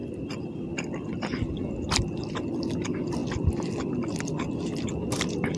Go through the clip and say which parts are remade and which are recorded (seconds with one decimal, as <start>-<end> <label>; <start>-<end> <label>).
0.0-5.6 recorded